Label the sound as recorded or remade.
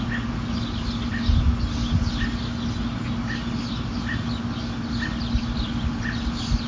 recorded